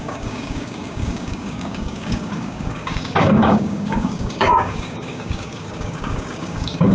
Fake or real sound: fake